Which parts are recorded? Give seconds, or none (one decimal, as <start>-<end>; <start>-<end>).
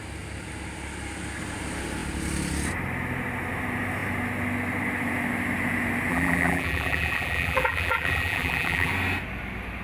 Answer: 0.0-6.1; 8.9-9.8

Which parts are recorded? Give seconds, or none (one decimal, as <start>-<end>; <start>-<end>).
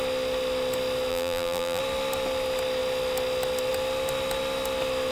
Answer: 0.0-1.1; 1.8-5.1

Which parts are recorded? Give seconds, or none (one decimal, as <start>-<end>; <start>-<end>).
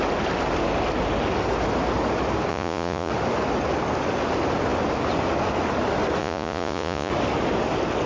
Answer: 0.0-2.5; 3.1-6.2; 7.1-8.1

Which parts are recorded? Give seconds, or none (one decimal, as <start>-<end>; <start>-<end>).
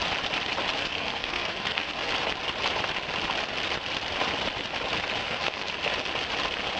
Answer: 0.0-0.8; 2.1-5.2; 5.7-6.8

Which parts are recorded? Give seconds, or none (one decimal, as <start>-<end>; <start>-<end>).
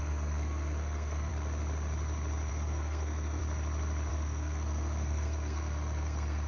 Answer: 1.3-2.5; 3.4-4.1